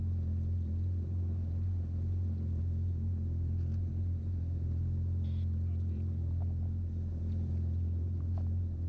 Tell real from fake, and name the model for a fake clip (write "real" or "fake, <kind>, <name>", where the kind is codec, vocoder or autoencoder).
real